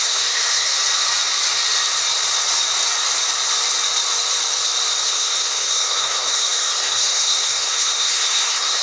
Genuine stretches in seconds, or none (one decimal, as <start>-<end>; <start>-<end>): 0.7-5.0